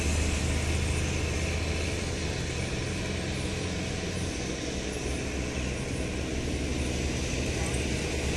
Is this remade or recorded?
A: recorded